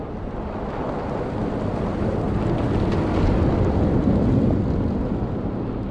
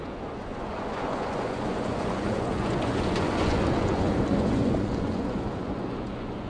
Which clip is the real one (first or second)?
first